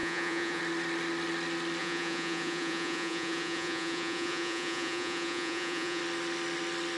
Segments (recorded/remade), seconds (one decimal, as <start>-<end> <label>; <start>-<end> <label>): 0.0-0.6 remade; 0.6-1.8 recorded; 1.8-6.0 remade; 6.0-7.0 recorded